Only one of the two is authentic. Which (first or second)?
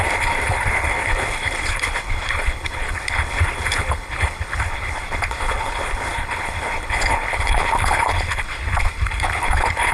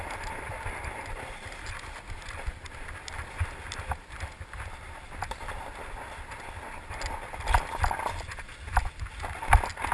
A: second